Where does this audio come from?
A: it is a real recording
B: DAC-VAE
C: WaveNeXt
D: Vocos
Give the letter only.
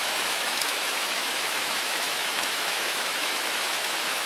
B